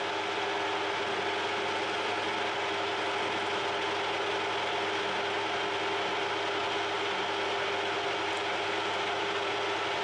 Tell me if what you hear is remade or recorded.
recorded